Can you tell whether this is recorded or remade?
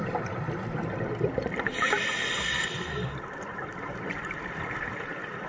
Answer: recorded